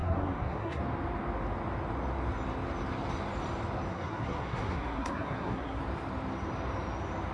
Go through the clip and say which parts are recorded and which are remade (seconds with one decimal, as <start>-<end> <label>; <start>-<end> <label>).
0.0-0.8 remade; 0.8-3.9 recorded; 3.9-5.8 remade; 5.8-7.3 recorded